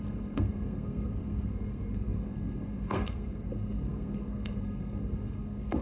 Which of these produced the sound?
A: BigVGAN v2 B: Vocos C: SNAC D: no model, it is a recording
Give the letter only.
C